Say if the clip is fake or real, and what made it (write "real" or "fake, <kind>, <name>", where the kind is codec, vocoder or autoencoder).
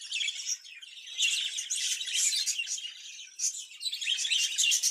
real